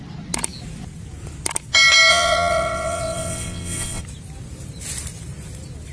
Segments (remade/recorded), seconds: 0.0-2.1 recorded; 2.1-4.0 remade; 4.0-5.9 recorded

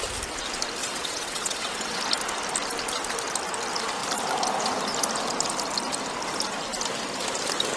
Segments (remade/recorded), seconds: 0.0-0.8 recorded; 0.8-2.0 remade; 2.0-7.8 recorded

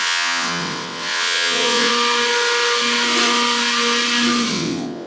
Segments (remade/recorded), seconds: 0.0-1.9 remade; 1.9-4.5 recorded; 4.5-5.1 remade

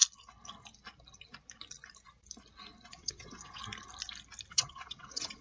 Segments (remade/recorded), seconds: 0.0-2.9 recorded; 2.9-3.6 remade; 3.6-4.5 recorded; 4.5-5.4 remade

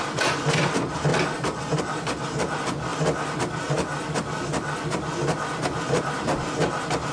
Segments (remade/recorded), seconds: 0.0-7.1 recorded

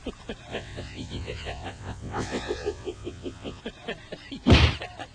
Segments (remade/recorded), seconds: 0.0-0.5 recorded; 0.5-3.6 remade; 3.6-5.1 recorded

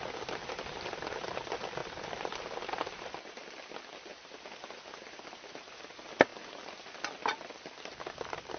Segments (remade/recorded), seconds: 0.0-8.6 recorded

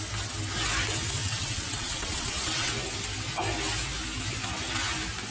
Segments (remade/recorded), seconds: 0.0-1.2 recorded; 1.2-2.7 remade; 2.7-5.3 recorded